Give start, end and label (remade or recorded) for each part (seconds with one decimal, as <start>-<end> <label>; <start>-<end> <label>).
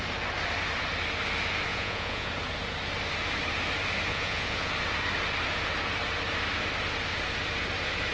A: 0.0-1.7 recorded; 1.7-2.3 remade; 2.3-4.1 recorded; 4.1-4.7 remade; 4.7-8.1 recorded